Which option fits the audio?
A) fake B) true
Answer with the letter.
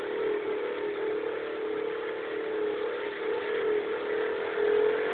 B